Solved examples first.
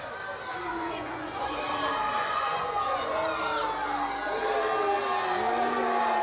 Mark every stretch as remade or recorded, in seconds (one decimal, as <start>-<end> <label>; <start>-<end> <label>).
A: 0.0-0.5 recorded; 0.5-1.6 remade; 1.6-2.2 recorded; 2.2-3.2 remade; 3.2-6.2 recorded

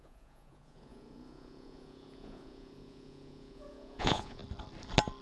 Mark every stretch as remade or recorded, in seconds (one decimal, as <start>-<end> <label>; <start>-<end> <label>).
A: 0.0-4.4 remade; 4.4-5.2 recorded

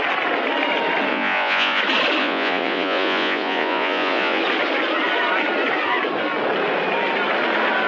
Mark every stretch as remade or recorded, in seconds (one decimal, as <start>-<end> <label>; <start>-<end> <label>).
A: 0.0-1.1 recorded; 1.1-1.8 remade; 1.8-2.2 recorded; 2.2-4.4 remade; 4.4-7.9 recorded

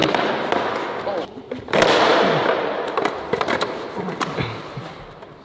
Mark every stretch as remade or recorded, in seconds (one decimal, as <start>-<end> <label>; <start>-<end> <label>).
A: 0.0-5.4 recorded

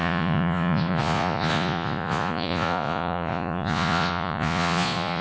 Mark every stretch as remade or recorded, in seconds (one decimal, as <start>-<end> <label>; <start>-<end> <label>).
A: 0.0-5.2 remade

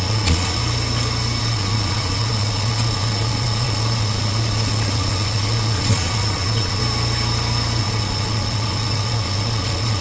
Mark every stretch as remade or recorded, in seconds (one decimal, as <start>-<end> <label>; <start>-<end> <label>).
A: 0.0-0.6 remade; 0.6-1.4 recorded; 1.4-6.8 remade; 6.8-7.8 recorded; 7.8-10.0 remade